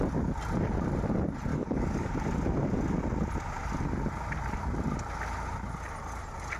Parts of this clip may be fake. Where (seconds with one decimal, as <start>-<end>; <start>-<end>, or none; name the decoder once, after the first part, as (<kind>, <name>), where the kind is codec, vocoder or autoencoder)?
1.5-2.1 (codec, DAC)